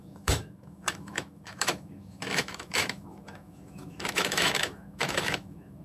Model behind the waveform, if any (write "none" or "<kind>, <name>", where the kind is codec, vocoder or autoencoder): autoencoder, DAC-VAE